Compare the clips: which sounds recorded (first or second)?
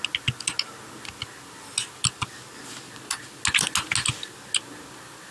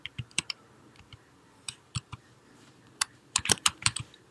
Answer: first